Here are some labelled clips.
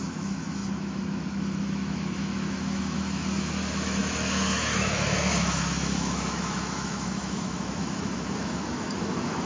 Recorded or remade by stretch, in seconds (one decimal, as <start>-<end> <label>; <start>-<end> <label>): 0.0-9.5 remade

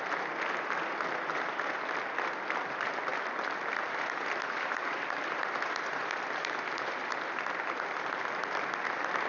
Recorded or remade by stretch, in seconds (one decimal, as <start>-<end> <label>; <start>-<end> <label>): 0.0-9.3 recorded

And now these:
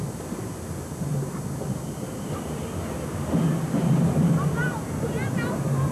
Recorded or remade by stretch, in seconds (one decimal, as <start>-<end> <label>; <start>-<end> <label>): 0.0-5.9 recorded

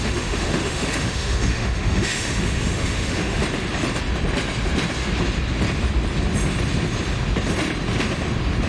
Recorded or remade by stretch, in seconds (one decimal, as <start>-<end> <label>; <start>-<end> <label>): 0.0-3.4 remade; 3.4-8.7 recorded

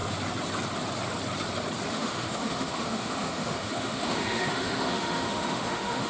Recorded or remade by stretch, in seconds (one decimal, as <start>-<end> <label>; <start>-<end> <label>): 0.0-1.9 recorded; 1.9-6.1 remade

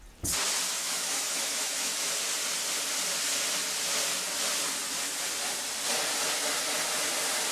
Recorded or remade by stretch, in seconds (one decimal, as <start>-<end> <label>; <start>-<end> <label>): 0.0-0.8 recorded; 0.8-2.1 remade; 2.1-7.5 recorded

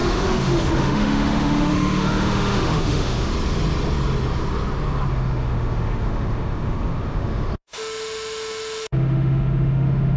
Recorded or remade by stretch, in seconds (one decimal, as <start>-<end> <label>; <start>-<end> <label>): 0.0-3.3 remade; 3.3-5.1 recorded; 5.1-10.2 remade